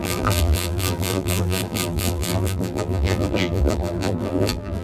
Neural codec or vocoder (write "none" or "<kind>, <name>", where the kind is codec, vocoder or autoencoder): vocoder, BigVGAN v2